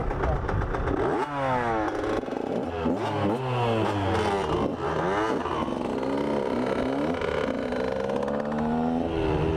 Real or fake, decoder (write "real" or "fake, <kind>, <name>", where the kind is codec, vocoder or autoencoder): real